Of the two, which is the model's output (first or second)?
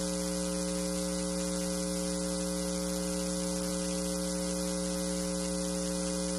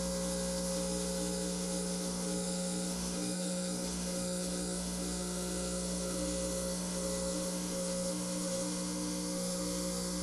second